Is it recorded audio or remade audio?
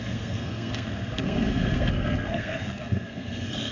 remade